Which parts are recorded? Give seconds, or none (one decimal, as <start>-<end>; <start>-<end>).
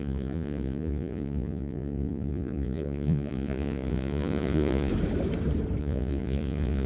4.9-5.8